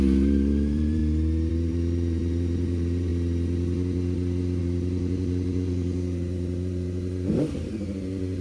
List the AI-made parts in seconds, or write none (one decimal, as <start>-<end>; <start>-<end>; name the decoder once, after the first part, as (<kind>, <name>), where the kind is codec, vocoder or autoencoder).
0.0-1.0 (vocoder, BigVGAN v2); 1.5-3.1; 4.6-8.4